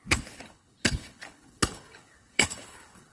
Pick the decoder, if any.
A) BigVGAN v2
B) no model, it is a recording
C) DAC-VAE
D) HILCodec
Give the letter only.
D